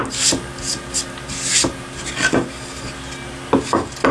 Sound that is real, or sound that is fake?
real